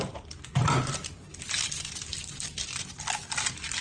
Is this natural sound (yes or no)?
yes